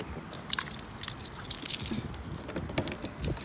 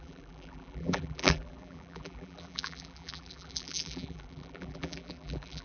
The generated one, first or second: second